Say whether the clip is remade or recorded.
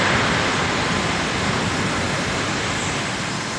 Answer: recorded